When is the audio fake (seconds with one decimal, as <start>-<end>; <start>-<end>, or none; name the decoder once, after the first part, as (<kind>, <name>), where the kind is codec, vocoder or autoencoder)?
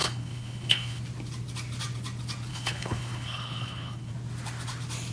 0.0-1.0 (codec, HILCodec); 2.5-4.1